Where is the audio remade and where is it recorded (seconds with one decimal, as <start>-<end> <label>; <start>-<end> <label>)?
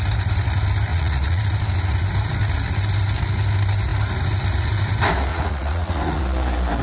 0.0-0.9 recorded; 0.9-1.4 remade; 1.4-5.3 recorded; 5.3-6.2 remade; 6.2-6.8 recorded